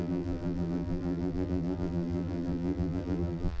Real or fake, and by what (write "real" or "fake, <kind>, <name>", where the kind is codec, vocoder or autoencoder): fake, vocoder, BigVGAN v2